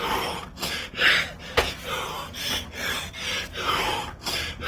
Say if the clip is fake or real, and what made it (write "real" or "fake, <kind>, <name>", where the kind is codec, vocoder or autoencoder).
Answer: real